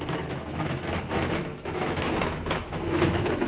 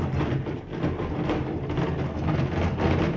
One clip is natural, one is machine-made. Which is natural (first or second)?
second